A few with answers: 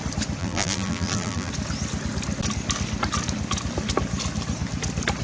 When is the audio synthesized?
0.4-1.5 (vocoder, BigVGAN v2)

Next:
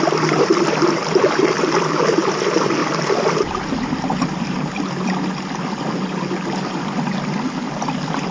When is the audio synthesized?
0.5-2.2 (vocoder, BigVGAN v2); 2.8-5.0

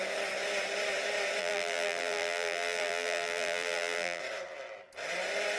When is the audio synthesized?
1.4-4.2 (vocoder, BigVGAN v2)

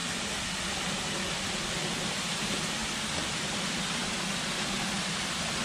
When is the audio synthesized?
2.8-4.4 (vocoder, BigVGAN v2)

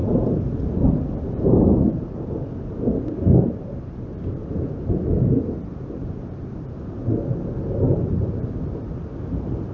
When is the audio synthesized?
0.0-7.0 (vocoder, BigVGAN v2); 7.6-9.7

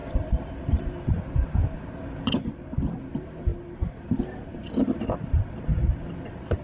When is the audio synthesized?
0.0-1.2 (vocoder, BigVGAN v2); 1.6-2.9; 4.5-5.3